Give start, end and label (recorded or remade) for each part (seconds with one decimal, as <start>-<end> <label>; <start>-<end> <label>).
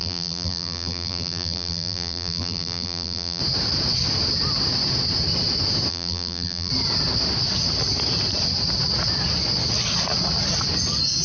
0.0-3.4 remade; 3.4-5.9 recorded; 5.9-6.7 remade; 6.7-11.2 recorded